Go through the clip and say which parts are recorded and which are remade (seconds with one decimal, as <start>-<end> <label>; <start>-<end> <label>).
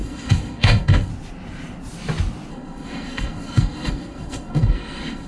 0.0-1.1 remade; 1.1-2.5 recorded; 2.5-5.3 remade